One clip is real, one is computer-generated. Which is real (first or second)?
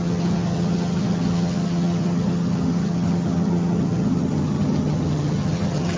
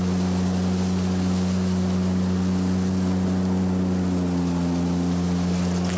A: second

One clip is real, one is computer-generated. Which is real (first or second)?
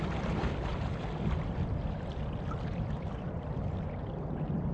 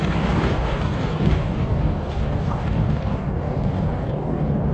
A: first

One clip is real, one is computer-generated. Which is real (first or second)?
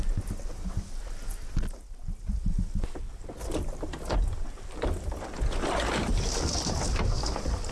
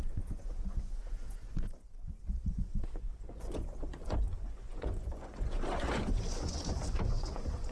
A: first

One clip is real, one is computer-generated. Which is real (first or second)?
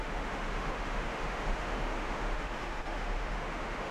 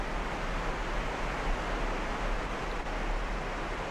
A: second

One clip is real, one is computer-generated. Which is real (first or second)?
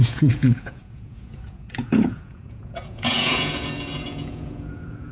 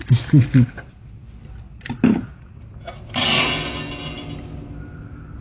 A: second